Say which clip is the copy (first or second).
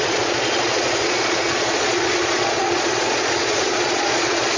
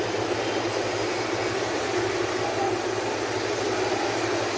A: first